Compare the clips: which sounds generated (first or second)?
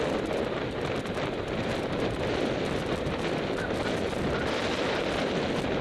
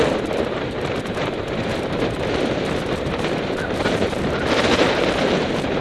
second